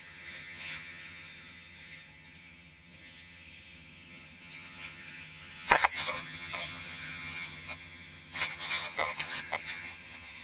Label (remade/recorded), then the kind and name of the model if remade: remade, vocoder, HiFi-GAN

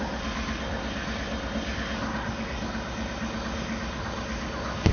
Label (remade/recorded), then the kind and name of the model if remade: recorded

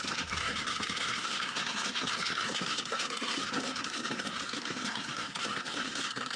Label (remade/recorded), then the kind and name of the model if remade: remade, codec, SNAC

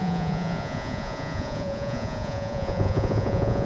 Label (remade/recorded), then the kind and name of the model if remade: remade, vocoder, Vocos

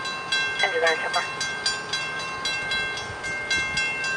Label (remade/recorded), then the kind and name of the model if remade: recorded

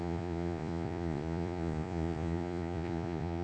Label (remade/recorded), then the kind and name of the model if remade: remade, vocoder, Vocos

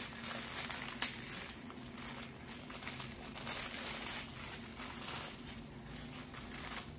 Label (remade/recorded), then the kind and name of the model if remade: recorded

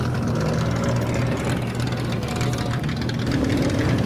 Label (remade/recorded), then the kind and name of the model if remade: recorded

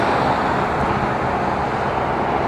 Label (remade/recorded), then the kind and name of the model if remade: recorded